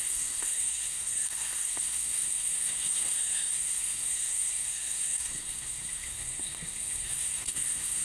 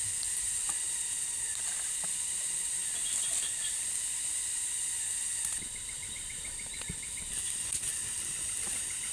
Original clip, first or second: second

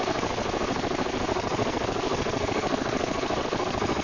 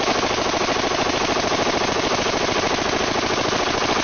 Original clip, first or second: second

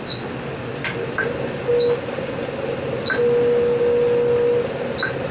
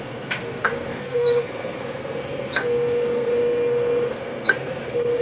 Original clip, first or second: first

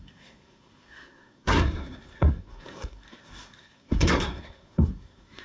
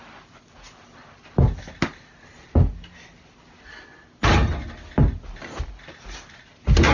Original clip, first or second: second